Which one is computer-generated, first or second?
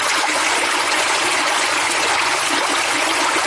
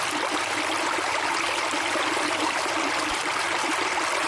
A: first